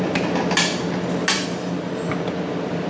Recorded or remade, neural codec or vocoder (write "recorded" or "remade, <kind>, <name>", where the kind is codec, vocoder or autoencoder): recorded